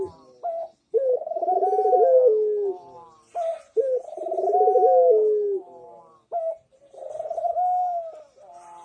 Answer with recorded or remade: recorded